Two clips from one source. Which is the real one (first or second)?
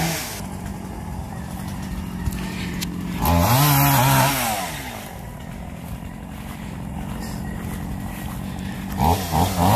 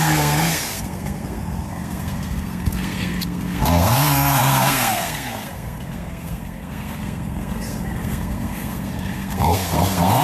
first